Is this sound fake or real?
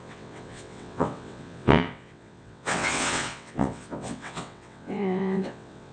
fake